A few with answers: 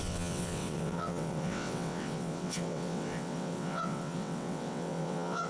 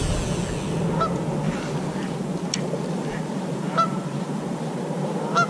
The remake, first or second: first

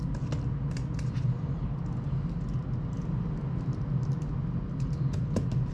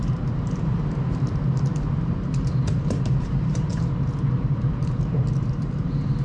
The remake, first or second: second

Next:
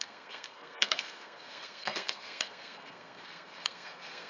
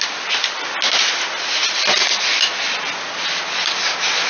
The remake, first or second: first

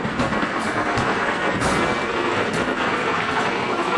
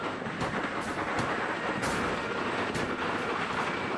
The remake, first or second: first